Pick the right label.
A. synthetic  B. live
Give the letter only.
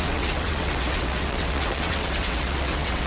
A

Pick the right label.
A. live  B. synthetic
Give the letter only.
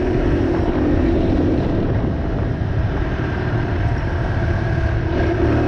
B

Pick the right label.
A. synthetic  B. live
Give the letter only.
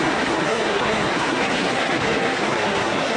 A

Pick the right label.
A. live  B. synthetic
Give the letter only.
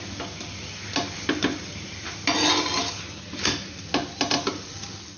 A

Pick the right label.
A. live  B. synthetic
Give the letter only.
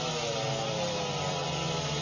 A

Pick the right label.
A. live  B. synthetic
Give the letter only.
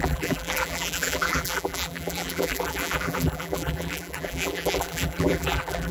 B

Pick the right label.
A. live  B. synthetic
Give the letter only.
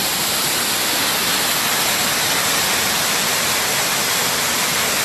A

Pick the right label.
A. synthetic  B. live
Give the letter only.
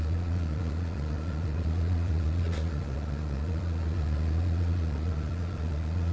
A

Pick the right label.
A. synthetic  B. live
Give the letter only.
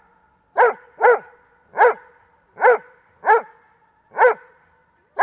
B